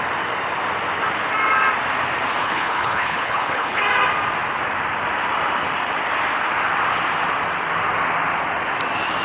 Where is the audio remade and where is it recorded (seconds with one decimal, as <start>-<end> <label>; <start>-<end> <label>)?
0.0-2.4 recorded; 2.4-3.8 remade; 3.8-9.2 recorded